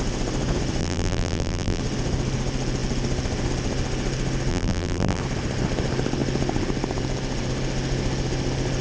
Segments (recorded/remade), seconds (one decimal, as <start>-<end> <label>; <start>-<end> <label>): 0.0-0.8 recorded; 0.8-1.8 remade; 1.8-4.5 recorded; 4.5-5.2 remade; 5.2-8.8 recorded